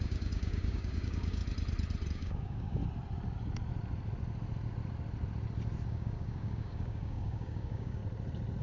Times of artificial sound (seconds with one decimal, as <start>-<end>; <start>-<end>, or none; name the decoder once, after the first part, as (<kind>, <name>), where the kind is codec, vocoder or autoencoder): 0.0-1.4 (codec, DAC); 2.1-2.8; 5.9-8.0